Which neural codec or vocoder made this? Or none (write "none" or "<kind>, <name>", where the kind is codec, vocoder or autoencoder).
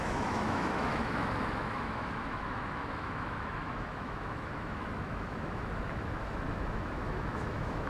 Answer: autoencoder, DAC-VAE